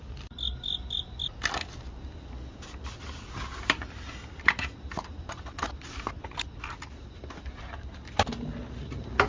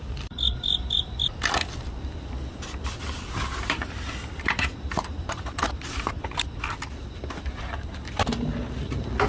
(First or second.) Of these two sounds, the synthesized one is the second